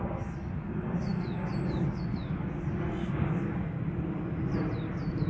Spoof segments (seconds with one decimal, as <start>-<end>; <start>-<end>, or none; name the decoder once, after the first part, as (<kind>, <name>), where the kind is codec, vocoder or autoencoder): 3.0-3.8 (codec, DAC)